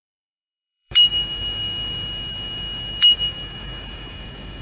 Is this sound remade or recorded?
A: remade